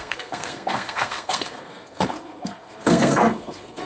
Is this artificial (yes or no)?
yes